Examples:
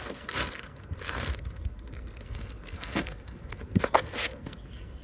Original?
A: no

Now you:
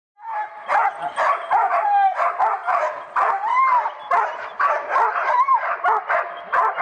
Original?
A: yes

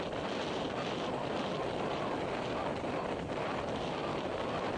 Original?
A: yes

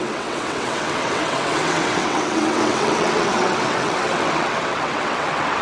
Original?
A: no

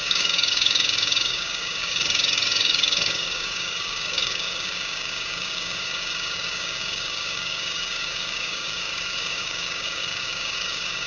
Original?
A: no